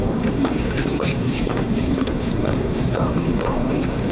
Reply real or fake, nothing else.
fake